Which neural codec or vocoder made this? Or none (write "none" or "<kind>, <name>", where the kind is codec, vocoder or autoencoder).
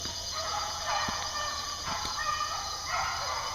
vocoder, Vocos